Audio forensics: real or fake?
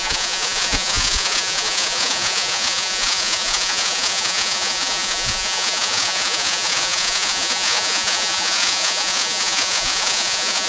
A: fake